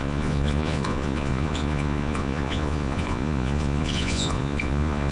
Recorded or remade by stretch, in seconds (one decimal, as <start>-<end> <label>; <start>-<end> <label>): 0.0-5.1 remade

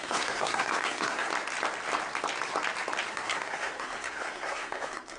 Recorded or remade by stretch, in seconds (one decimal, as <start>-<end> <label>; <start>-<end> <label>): 0.0-1.3 remade; 1.3-3.1 recorded; 3.1-5.2 remade

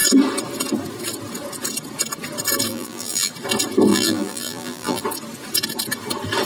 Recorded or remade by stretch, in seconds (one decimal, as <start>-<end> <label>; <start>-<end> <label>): 0.0-2.7 recorded; 2.7-3.3 remade; 3.3-3.9 recorded; 3.9-5.0 remade; 5.0-6.4 recorded

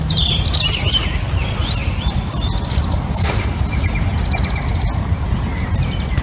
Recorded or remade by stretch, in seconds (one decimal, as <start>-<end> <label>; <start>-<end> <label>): 0.0-1.8 recorded; 1.8-3.2 remade; 3.2-4.1 recorded; 4.1-5.3 remade; 5.3-6.2 recorded

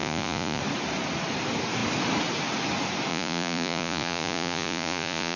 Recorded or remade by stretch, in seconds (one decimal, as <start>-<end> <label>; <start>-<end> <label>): 0.0-0.6 remade; 0.6-3.1 recorded; 3.1-5.4 remade

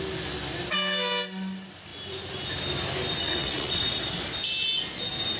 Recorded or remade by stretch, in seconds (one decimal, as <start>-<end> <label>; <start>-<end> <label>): 0.0-3.2 recorded; 3.2-3.8 remade; 3.8-5.4 recorded

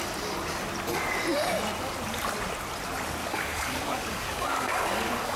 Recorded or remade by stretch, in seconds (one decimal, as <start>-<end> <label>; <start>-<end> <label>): 0.0-3.2 recorded; 3.2-5.4 remade

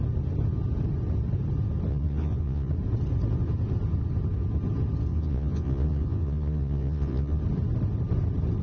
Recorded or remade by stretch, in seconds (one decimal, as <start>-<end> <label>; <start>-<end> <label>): 0.0-1.9 recorded; 1.9-2.7 remade; 2.7-5.1 recorded; 5.1-7.4 remade; 7.4-8.6 recorded